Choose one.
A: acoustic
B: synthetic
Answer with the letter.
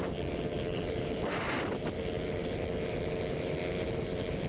B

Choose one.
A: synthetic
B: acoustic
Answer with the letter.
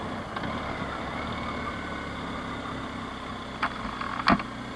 B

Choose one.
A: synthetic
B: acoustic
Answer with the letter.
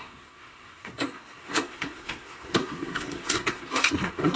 A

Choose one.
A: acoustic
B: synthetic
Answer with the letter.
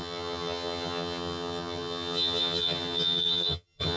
B